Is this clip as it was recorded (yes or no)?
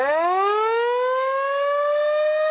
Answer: yes